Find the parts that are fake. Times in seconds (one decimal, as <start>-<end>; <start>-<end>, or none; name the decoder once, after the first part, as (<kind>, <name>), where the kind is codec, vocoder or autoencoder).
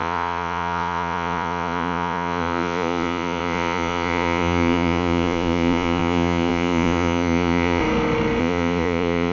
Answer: 0.0-7.8 (vocoder, Vocos); 8.4-9.3